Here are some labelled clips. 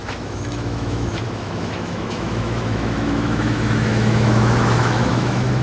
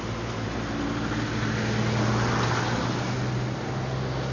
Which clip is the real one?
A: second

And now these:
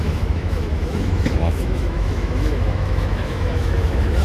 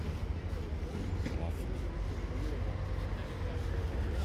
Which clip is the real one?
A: second